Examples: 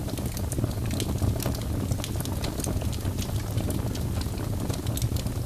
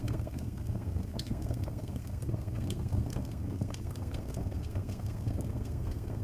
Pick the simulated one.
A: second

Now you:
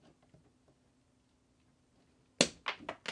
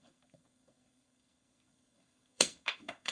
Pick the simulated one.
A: second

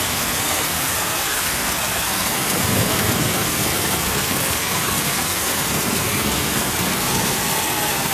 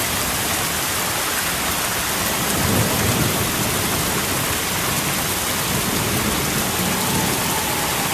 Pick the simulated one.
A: first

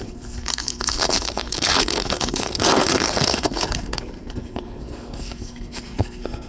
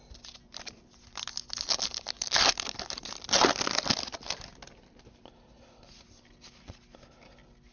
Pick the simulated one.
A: first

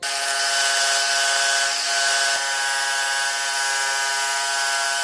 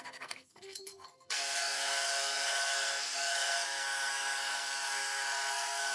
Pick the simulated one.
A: second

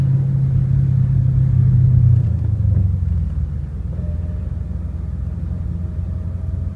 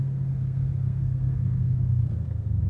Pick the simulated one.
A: second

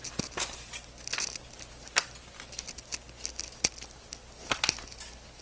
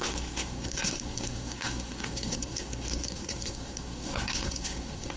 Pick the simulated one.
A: second